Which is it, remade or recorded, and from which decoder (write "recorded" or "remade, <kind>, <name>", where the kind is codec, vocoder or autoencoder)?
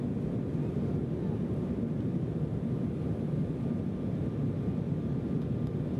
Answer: recorded